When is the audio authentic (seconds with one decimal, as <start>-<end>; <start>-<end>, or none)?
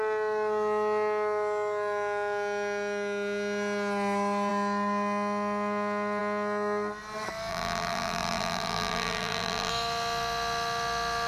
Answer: 0.0-7.5; 9.7-11.3